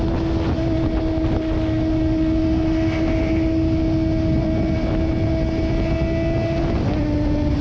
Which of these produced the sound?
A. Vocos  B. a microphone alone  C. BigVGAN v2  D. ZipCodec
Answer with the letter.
B